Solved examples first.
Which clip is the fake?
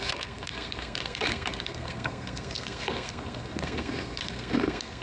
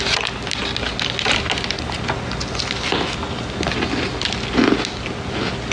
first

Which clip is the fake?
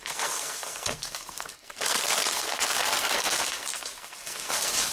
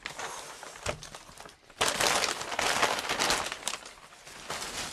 first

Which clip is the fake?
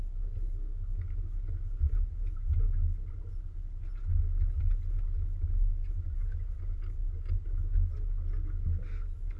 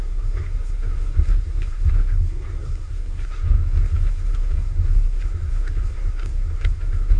second